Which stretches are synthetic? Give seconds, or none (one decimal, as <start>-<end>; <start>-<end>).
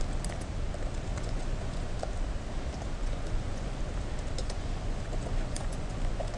1.1-2.0; 3.0-3.8; 4.4-6.4